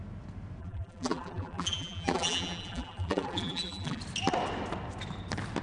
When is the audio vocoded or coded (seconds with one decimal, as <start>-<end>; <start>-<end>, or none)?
0.6-4.0